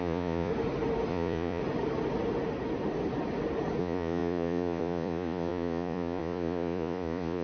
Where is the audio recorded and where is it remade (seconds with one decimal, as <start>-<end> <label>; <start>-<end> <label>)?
0.0-0.5 remade; 0.5-1.1 recorded; 1.1-1.6 remade; 1.6-3.8 recorded; 3.8-7.4 remade